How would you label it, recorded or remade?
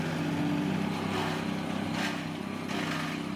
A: recorded